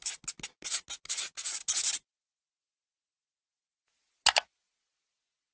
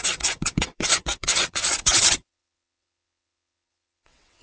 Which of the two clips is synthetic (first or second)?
second